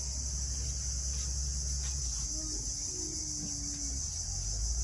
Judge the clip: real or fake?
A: real